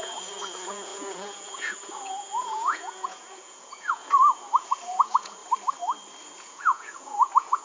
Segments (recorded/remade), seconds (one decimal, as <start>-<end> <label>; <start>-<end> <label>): 0.0-5.4 remade; 5.4-6.4 recorded; 6.4-7.6 remade